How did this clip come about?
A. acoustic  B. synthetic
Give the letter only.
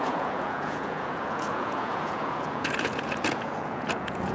B